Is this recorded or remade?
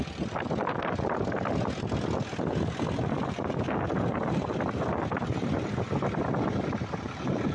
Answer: recorded